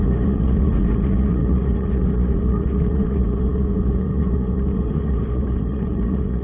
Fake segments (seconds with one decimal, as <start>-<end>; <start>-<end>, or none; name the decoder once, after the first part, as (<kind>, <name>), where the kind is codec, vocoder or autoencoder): 0.0-6.4 (vocoder, Vocos)